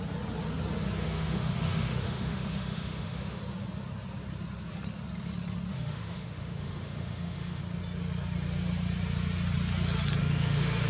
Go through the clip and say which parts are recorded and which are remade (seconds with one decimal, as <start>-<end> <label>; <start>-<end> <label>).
0.0-1.0 recorded; 1.0-3.4 remade; 3.4-5.7 recorded; 5.7-7.6 remade; 7.6-10.2 recorded; 10.2-10.9 remade